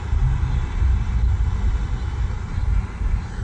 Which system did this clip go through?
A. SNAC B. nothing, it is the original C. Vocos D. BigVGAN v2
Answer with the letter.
B